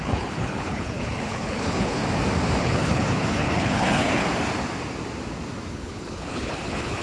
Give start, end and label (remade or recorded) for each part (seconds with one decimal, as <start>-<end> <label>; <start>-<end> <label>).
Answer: 0.0-2.0 remade; 2.0-2.6 recorded; 2.6-4.3 remade; 4.3-5.7 recorded; 5.7-7.0 remade